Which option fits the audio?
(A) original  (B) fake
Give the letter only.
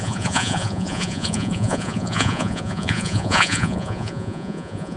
B